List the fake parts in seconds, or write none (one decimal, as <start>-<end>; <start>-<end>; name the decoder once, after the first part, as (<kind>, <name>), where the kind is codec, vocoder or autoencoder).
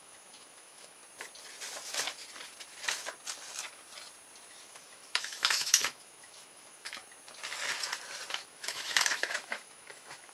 0.0-1.0 (autoencoder, DAC-VAE); 4.6-7.0; 8.3-10.3